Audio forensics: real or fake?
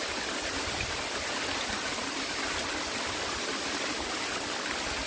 real